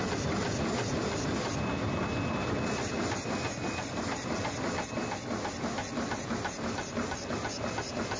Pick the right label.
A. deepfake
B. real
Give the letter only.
B